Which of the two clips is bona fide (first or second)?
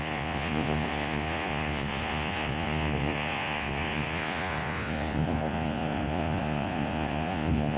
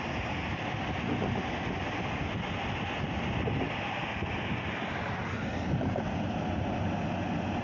second